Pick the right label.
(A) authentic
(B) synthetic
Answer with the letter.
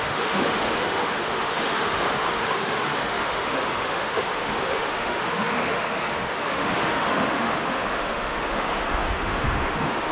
B